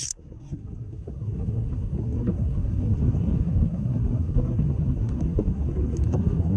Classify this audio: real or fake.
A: fake